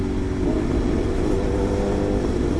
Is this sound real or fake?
real